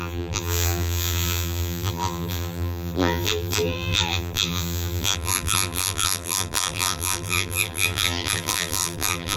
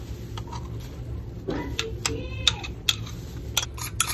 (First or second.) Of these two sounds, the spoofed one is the first